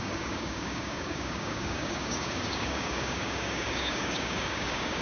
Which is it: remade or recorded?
remade